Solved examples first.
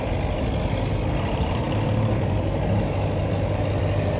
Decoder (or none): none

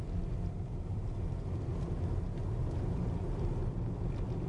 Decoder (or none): none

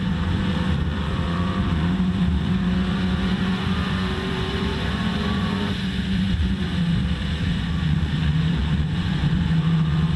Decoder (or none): vocoder, Vocos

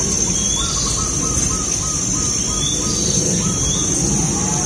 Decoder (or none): none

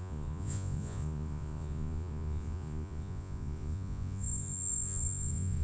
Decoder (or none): vocoder, Vocos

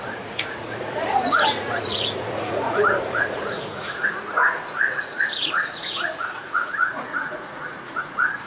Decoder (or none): vocoder, Vocos